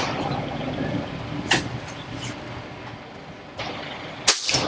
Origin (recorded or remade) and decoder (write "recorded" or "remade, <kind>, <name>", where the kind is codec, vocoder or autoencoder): recorded